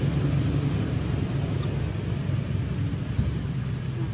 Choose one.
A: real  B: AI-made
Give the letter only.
A